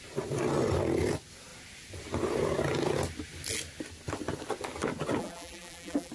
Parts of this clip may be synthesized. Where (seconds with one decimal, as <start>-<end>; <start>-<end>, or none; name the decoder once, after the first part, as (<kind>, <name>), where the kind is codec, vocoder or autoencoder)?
5.2-6.1 (vocoder, BigVGAN v2)